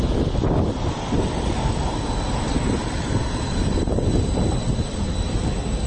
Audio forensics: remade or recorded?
recorded